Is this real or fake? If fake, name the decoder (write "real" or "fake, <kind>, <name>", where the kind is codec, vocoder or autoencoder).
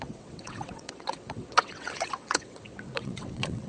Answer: fake, vocoder, WaveNeXt